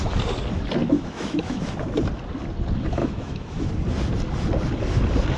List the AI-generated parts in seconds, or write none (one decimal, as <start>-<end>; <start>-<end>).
0.8-1.6; 3.0-3.7

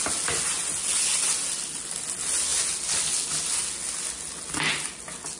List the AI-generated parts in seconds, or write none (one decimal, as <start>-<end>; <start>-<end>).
none

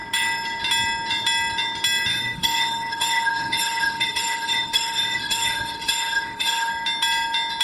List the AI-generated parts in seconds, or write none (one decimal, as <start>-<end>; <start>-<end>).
2.1-6.7

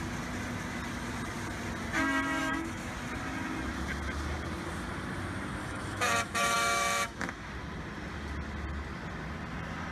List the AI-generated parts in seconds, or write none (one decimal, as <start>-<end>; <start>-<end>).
2.4-2.9; 5.6-7.5